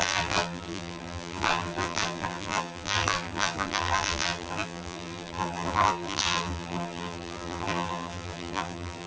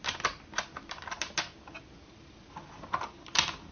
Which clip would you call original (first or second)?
second